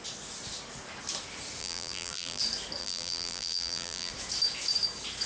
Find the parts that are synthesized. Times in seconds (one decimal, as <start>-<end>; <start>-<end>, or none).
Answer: 1.6-2.4; 2.8-4.1